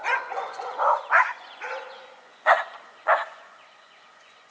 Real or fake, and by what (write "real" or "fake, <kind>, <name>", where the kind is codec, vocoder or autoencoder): fake, vocoder, Vocos